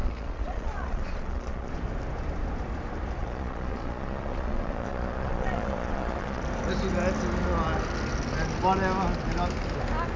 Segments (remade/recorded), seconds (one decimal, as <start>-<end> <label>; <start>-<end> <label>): 0.0-1.7 remade; 1.7-3.2 recorded; 3.2-6.4 remade; 6.4-10.2 recorded